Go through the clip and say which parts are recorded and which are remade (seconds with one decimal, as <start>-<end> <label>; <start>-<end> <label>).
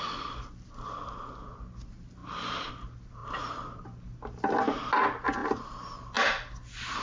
0.0-7.0 recorded